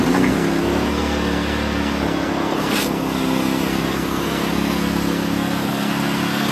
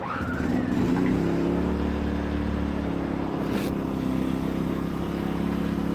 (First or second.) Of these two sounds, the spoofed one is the first